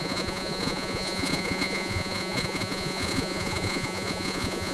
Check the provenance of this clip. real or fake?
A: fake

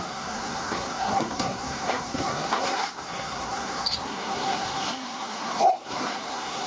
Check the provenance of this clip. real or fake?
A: fake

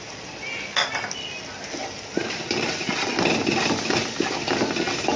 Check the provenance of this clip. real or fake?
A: real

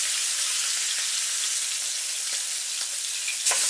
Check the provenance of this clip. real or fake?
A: real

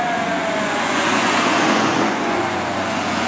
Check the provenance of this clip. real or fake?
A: fake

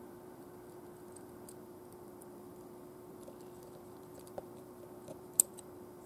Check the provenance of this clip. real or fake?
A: fake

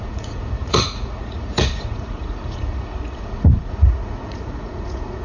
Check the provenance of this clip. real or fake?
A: fake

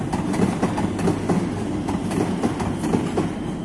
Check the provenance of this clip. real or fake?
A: real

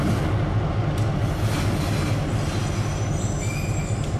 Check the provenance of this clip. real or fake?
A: real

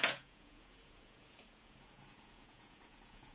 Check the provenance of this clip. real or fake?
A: fake